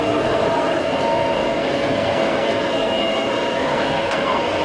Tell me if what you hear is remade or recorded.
remade